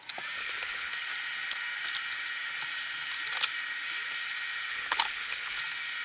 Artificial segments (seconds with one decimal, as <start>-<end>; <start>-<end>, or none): 0.4-0.9; 4.7-5.6